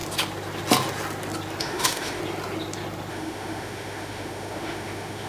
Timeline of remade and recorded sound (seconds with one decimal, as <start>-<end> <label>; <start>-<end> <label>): 0.0-1.6 recorded; 1.6-2.2 remade; 2.2-3.1 recorded; 3.1-5.3 remade

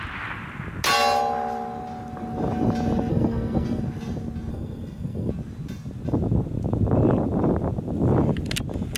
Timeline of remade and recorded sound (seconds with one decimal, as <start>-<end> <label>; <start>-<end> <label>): 0.0-3.1 recorded; 3.1-3.8 remade; 3.8-4.5 recorded; 4.5-5.3 remade; 5.3-9.0 recorded

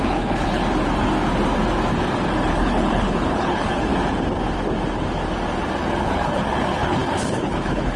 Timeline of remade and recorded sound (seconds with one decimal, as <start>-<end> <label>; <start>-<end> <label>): 0.0-0.6 remade; 0.6-2.5 recorded; 2.5-3.9 remade; 3.9-6.0 recorded; 6.0-8.0 remade

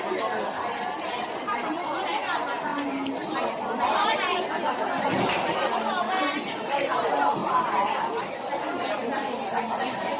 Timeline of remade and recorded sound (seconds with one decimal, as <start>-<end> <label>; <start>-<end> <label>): 0.0-10.2 recorded

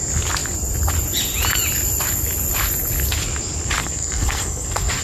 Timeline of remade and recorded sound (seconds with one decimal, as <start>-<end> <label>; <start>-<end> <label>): 0.0-3.8 recorded; 3.8-5.0 remade

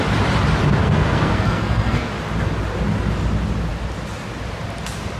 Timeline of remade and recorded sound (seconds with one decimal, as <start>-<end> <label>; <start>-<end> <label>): 0.0-0.8 recorded; 0.8-2.1 remade; 2.1-5.2 recorded

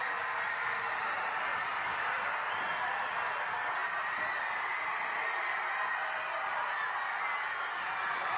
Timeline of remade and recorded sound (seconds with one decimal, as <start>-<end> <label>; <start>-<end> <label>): 0.0-8.4 recorded